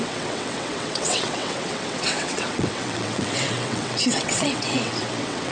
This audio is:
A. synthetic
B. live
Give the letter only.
A